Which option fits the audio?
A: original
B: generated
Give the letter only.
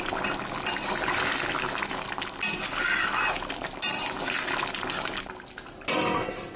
A